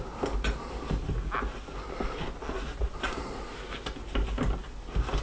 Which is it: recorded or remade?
recorded